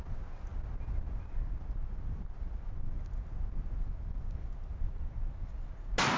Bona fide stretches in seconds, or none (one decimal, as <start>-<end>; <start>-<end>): 0.0-6.2